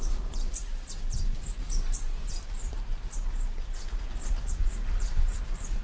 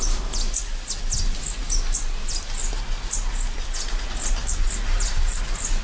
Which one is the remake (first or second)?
first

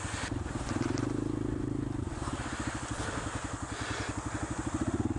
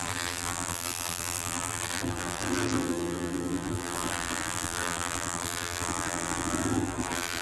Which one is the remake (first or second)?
second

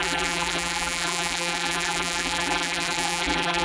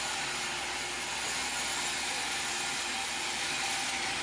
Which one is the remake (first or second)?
first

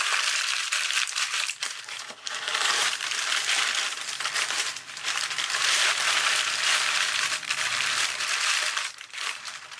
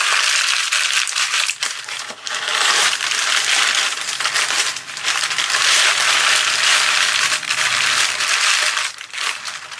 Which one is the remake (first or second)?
first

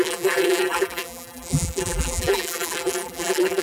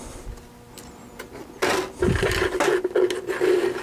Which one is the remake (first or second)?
first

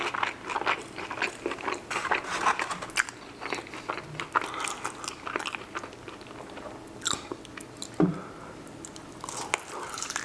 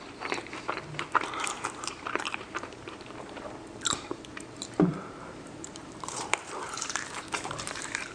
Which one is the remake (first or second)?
second